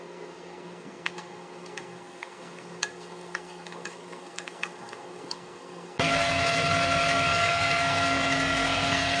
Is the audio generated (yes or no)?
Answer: yes